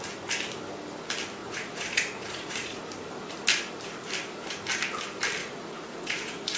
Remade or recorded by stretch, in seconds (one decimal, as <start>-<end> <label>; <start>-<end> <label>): 0.0-1.4 recorded; 1.4-2.8 remade; 2.8-5.4 recorded; 5.4-6.6 remade

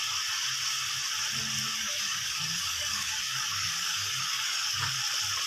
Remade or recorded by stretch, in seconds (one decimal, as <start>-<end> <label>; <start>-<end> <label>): 0.0-1.7 recorded; 1.7-5.0 remade; 5.0-5.5 recorded

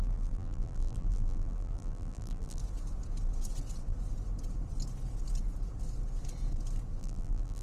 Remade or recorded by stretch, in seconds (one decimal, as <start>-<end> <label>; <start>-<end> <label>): 0.0-2.6 remade; 2.6-7.0 recorded; 7.0-7.6 remade

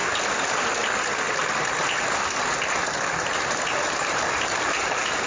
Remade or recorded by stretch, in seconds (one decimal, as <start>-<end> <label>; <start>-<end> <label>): 0.0-3.2 recorded; 3.2-5.3 remade

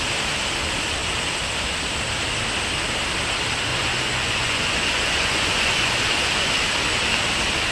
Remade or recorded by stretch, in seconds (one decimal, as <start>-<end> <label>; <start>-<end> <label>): 0.0-3.7 recorded; 3.7-6.5 remade; 6.5-7.7 recorded

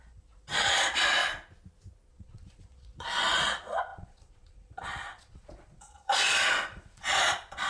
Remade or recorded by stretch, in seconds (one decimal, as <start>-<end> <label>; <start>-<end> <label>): 0.0-1.2 remade; 1.2-2.1 recorded; 2.1-7.7 remade

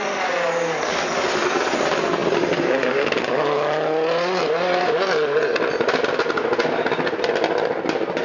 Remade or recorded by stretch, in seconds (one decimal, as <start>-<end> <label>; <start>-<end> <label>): 0.0-8.2 recorded

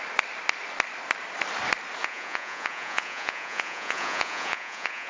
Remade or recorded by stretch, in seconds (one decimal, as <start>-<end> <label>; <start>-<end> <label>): 0.0-2.0 recorded; 2.0-5.1 remade